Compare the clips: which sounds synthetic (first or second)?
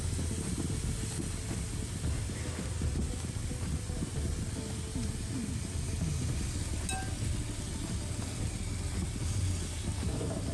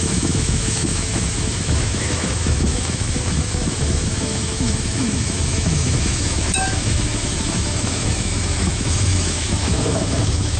second